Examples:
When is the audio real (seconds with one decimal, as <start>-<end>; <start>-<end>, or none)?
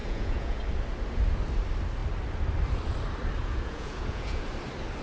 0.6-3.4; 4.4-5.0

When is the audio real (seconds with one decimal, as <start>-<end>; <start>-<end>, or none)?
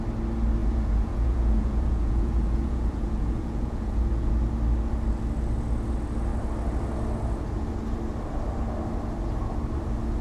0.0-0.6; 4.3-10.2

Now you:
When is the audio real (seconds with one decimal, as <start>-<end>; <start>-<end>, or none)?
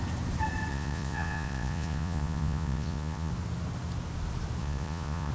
0.0-0.7; 3.3-4.6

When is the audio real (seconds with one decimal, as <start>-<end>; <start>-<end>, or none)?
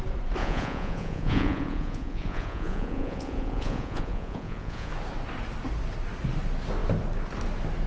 0.0-0.4; 4.9-7.9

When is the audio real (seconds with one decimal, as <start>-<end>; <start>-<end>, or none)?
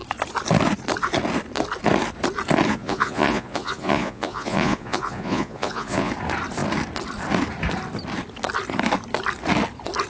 0.0-2.7; 6.1-10.1